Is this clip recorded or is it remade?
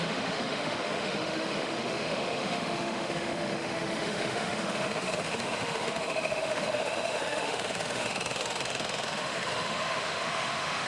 remade